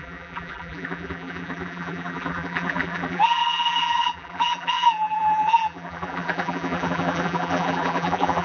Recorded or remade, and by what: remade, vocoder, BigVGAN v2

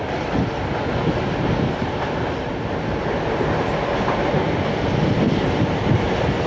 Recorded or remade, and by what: recorded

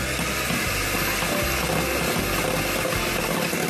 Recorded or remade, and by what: recorded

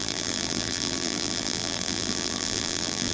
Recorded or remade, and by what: remade, vocoder, BigVGAN v2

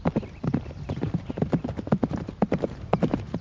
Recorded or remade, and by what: remade, vocoder, BigVGAN v2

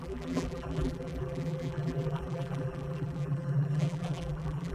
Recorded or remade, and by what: remade, vocoder, BigVGAN v2